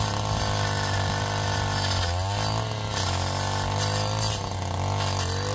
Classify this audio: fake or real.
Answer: real